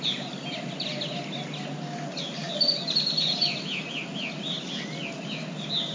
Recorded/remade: recorded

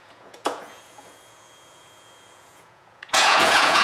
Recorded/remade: remade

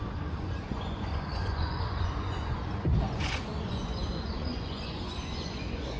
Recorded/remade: remade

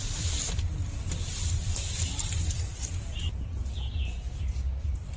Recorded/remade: recorded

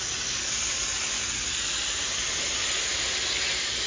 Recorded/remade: recorded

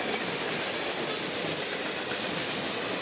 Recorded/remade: recorded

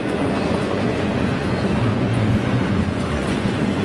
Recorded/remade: remade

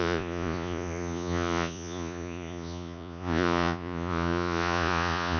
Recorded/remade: remade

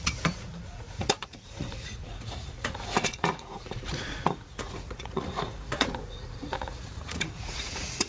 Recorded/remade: remade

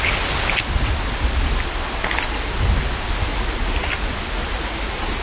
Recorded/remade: recorded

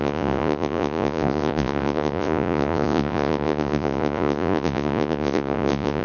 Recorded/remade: remade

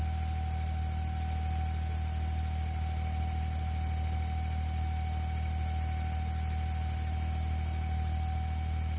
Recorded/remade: recorded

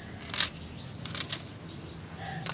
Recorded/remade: recorded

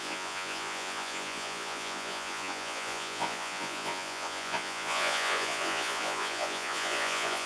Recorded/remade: remade